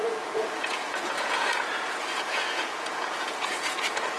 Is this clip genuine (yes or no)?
no